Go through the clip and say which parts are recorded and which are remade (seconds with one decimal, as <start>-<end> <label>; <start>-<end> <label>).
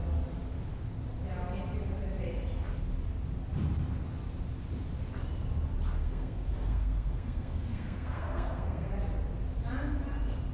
0.0-6.0 recorded; 6.0-8.9 remade; 8.9-10.5 recorded